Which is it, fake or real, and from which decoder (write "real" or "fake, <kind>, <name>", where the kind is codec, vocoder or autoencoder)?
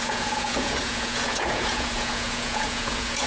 fake, vocoder, Vocos